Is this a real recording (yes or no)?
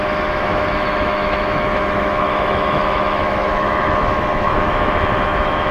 no